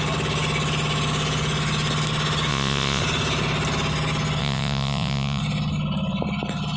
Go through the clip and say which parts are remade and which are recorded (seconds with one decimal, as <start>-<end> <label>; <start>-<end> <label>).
0.0-2.5 recorded; 2.5-3.0 remade; 3.0-4.4 recorded; 4.4-5.4 remade; 5.4-6.8 recorded